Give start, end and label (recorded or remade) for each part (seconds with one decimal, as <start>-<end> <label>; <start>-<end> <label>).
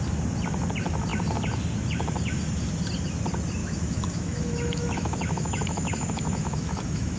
0.0-3.6 recorded; 3.6-7.2 remade